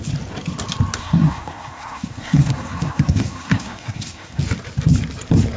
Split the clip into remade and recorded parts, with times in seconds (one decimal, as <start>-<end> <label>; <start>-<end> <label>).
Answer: 0.0-1.0 recorded; 1.0-4.4 remade; 4.4-5.6 recorded